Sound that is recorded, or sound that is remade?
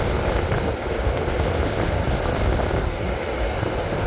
recorded